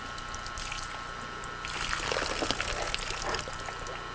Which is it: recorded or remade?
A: recorded